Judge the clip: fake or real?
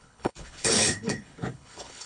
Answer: fake